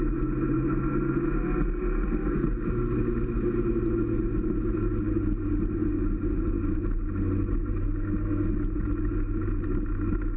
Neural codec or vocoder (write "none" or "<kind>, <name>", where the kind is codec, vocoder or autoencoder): none